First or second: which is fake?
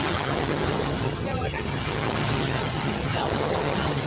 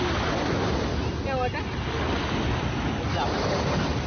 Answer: first